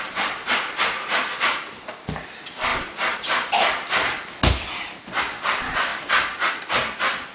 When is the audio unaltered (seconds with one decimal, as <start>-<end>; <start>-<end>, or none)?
0.0-7.3